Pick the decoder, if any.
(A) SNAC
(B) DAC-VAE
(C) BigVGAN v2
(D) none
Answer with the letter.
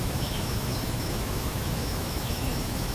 B